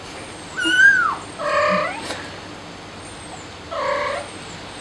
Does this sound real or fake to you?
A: real